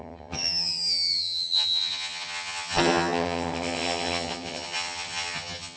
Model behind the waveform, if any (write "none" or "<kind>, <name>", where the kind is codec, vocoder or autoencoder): vocoder, HiFi-GAN